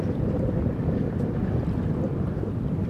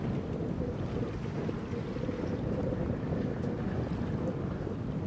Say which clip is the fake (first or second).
first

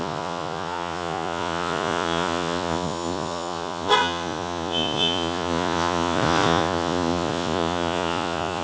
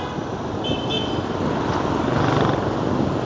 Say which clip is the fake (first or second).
first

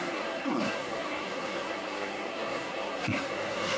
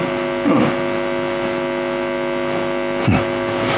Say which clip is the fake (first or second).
first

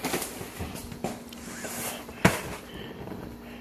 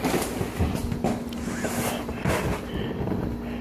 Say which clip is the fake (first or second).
first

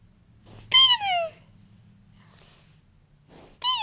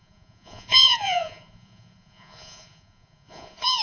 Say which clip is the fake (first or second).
second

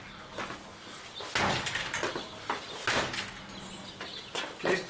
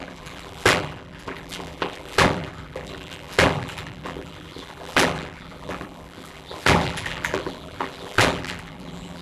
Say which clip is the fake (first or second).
second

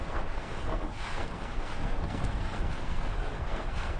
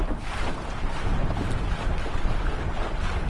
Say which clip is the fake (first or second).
first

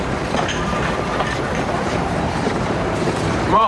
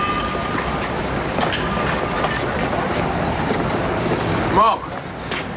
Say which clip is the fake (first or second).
first